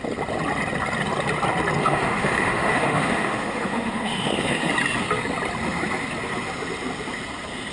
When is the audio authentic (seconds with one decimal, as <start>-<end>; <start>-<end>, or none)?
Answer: 0.0-1.8; 4.7-7.7